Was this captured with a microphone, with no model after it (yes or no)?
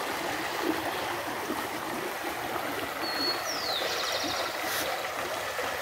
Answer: yes